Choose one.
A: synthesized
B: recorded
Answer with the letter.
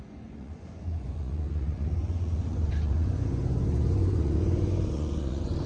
A